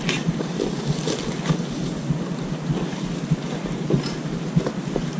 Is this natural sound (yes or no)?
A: yes